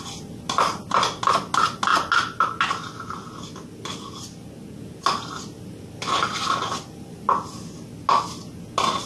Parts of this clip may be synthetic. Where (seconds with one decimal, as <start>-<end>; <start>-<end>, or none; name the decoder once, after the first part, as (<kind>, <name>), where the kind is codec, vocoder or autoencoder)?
none